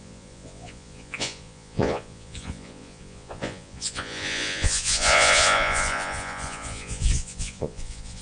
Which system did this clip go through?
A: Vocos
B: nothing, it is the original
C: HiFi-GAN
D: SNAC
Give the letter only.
A